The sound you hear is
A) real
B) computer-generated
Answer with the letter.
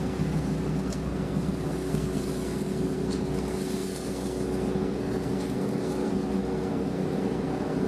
B